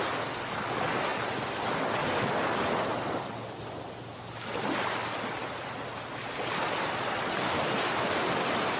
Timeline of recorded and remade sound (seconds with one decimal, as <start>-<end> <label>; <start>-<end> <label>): 0.0-8.8 recorded